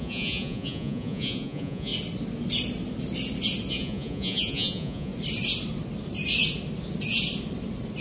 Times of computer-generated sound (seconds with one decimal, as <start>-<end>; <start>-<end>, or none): 0.0-1.9; 3.7-5.1

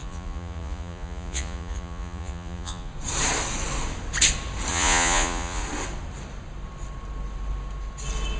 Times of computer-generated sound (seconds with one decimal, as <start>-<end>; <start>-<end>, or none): 0.0-2.9; 4.7-5.6

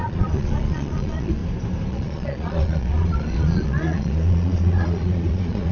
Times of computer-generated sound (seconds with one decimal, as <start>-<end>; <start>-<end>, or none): 0.0-1.4; 1.9-5.7

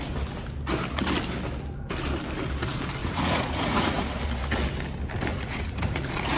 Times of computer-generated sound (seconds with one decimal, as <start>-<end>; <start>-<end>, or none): 3.0-4.0; 5.3-6.4

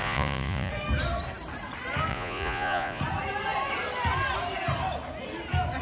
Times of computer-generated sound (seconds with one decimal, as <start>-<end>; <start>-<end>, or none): 0.0-0.7; 2.1-3.0

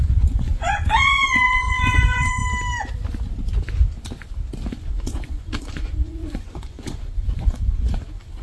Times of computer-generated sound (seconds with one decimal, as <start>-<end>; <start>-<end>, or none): 0.0-2.4; 4.7-8.4